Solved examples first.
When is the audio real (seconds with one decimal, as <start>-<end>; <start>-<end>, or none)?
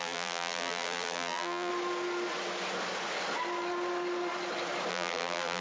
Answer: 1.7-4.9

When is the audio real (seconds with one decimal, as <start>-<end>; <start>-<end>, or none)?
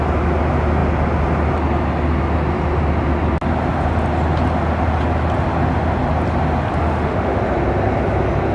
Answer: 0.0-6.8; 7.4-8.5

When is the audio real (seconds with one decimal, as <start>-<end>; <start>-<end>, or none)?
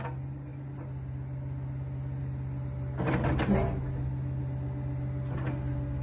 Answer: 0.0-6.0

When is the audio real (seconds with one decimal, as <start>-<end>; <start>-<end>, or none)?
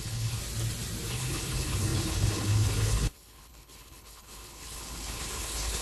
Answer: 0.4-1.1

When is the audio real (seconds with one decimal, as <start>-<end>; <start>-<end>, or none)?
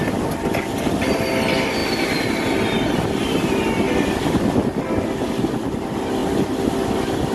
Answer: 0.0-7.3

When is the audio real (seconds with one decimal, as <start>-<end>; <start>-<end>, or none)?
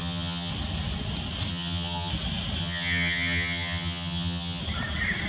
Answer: 0.5-1.5; 2.1-2.6; 4.6-5.3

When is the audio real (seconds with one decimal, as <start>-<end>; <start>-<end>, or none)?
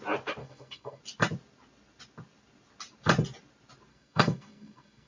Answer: 0.0-0.4; 1.0-3.9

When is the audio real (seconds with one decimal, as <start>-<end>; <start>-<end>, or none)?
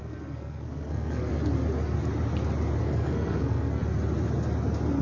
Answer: 1.3-2.8; 3.8-5.0